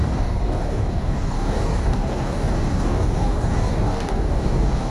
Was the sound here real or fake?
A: fake